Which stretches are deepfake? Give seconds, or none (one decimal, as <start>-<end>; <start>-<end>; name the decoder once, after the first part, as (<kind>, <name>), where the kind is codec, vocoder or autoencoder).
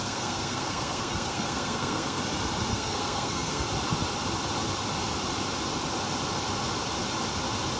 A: 0.0-2.2 (codec, SNAC); 2.7-3.7